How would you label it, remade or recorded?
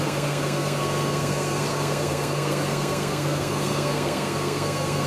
remade